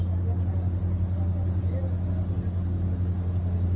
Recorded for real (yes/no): yes